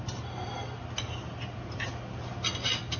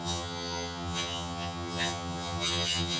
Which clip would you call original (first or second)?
first